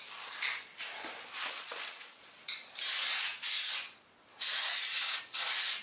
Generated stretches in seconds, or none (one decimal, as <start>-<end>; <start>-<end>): 1.4-2.2